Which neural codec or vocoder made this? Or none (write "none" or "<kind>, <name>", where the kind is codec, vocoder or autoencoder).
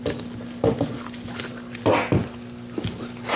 none